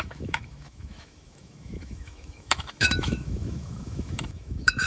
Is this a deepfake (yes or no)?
yes